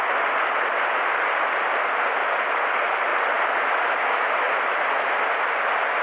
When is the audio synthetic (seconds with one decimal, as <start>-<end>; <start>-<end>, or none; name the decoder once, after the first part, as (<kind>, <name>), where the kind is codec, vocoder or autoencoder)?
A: none